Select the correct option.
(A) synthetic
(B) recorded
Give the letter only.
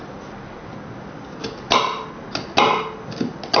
B